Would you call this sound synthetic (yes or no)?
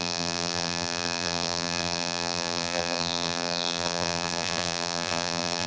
yes